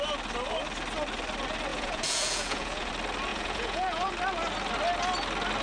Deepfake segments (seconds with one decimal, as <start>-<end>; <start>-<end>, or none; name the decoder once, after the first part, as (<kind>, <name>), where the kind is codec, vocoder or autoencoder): 1.7-2.9 (vocoder, Vocos); 3.3-4.1